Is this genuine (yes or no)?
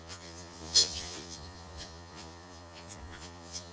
no